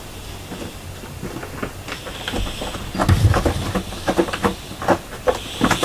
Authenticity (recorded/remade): recorded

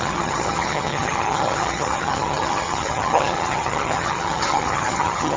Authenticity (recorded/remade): remade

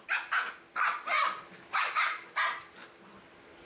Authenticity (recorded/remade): recorded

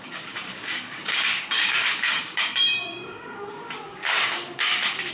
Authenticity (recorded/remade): remade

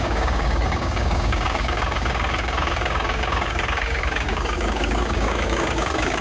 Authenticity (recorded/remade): remade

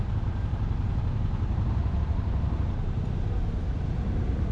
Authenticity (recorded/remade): recorded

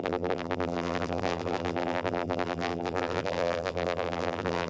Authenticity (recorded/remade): remade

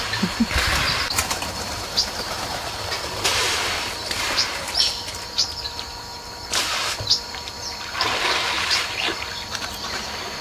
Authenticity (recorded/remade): remade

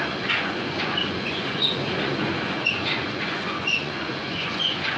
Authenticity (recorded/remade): remade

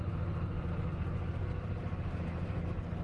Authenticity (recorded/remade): recorded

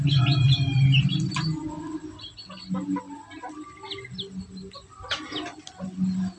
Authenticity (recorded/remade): recorded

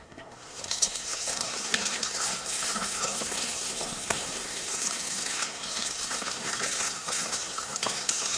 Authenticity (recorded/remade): remade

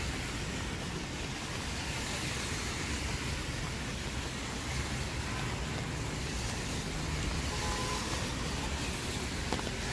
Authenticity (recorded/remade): recorded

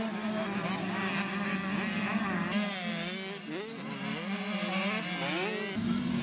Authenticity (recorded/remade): recorded